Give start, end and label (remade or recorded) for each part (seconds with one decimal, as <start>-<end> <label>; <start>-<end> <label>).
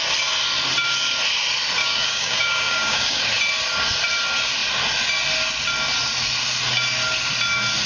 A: 0.0-1.8 recorded; 1.8-3.2 remade; 3.2-7.9 recorded